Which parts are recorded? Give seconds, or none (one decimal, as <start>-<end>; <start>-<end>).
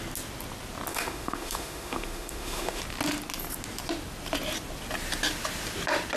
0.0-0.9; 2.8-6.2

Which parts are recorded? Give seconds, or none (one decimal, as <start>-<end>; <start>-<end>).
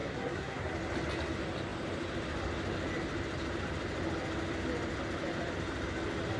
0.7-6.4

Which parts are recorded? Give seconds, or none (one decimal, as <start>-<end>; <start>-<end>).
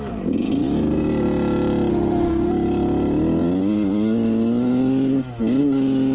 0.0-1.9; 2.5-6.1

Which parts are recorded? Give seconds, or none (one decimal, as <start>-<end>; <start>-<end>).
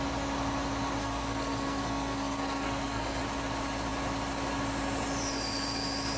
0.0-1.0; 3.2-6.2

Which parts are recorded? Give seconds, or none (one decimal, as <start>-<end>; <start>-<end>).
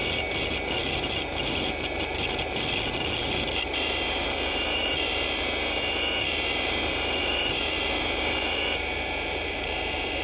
0.0-3.6; 4.9-6.5